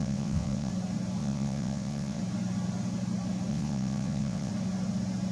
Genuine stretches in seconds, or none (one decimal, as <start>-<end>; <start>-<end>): 0.7-1.2; 2.2-3.5; 4.5-5.3